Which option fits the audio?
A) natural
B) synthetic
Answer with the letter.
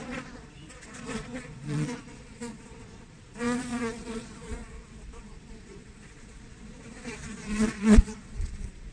B